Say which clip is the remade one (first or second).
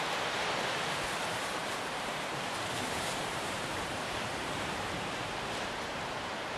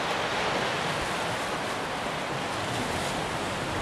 first